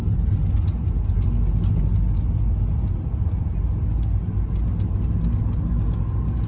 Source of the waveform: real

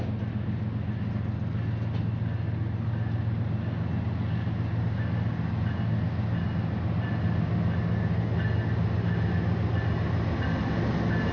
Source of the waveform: real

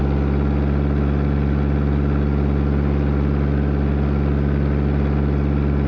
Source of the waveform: real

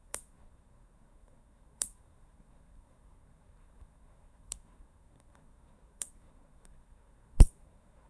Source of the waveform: fake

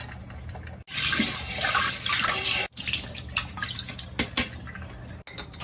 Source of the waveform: real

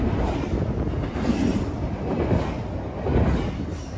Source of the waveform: real